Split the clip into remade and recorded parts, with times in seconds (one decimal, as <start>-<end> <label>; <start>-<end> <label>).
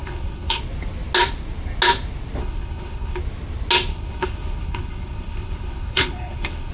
0.0-0.6 remade; 0.6-2.4 recorded; 2.4-3.2 remade; 3.2-3.9 recorded; 3.9-6.7 remade